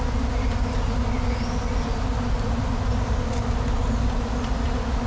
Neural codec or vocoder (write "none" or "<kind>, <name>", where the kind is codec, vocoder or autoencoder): none